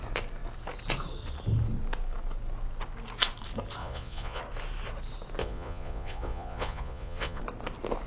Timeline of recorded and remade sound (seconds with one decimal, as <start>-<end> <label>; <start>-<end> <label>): 0.0-3.8 recorded; 3.8-4.4 remade; 4.4-5.4 recorded; 5.4-7.4 remade; 7.4-8.1 recorded